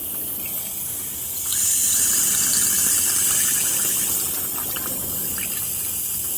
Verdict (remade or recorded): recorded